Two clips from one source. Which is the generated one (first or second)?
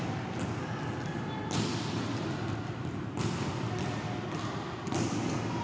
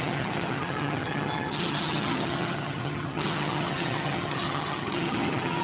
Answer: second